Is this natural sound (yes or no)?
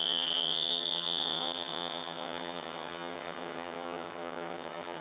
no